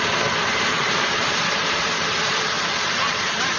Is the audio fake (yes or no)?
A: yes